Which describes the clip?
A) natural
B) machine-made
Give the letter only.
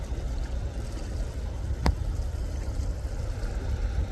A